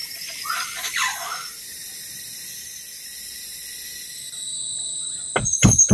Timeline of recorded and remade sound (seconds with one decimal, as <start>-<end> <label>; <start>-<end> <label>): 0.0-5.9 recorded